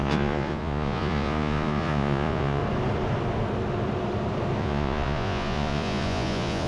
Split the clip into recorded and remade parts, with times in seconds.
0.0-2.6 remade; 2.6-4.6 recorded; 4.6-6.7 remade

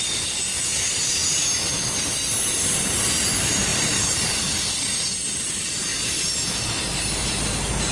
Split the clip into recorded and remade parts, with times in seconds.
0.0-3.7 recorded; 3.7-4.5 remade; 4.5-7.9 recorded